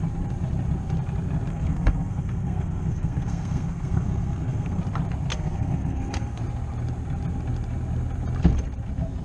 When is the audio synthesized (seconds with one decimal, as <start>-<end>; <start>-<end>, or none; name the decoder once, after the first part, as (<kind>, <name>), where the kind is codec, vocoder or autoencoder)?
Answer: 1.5-4.8 (codec, SNAC); 5.3-6.4